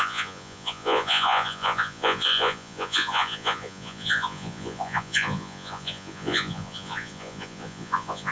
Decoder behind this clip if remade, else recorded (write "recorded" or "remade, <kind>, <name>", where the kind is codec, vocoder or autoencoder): remade, vocoder, Vocos